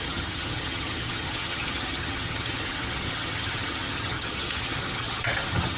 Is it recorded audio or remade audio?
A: remade